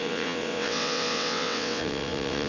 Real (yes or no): no